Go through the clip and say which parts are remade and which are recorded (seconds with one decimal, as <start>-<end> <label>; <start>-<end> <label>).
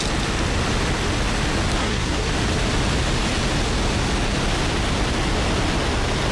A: 0.0-1.8 recorded; 1.8-2.3 remade; 2.3-6.3 recorded